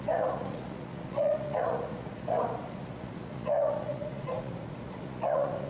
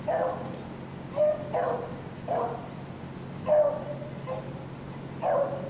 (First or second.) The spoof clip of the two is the first